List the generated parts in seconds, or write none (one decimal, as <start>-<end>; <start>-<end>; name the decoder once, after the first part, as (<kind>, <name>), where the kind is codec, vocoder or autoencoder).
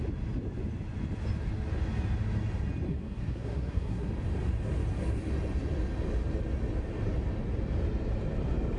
2.9-4.1 (codec, SNAC)